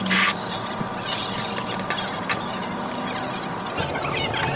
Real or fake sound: real